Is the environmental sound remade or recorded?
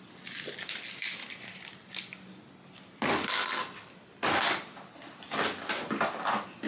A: recorded